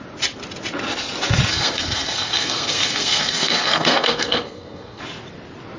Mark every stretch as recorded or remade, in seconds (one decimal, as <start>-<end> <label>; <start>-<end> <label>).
0.0-1.5 recorded; 1.5-5.0 remade; 5.0-5.8 recorded